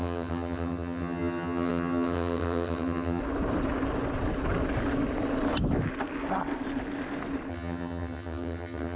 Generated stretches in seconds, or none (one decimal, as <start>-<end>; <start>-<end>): 0.0-3.2; 7.5-9.0